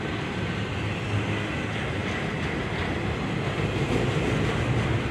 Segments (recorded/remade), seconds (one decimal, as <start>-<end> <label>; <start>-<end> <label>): 0.0-5.1 recorded